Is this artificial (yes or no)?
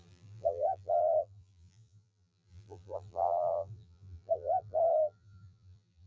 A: yes